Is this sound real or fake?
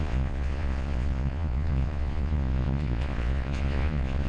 fake